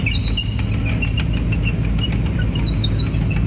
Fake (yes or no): no